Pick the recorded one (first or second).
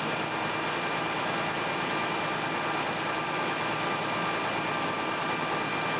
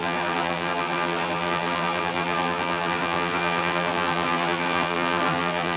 first